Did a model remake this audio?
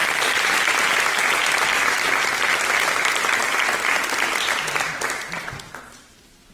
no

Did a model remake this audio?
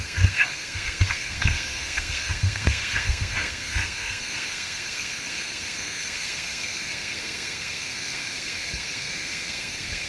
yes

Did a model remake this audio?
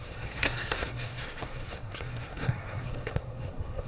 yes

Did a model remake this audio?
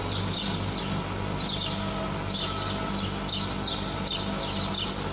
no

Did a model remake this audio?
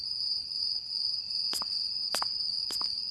no